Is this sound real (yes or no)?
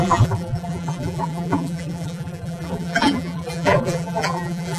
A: no